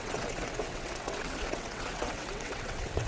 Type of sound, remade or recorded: remade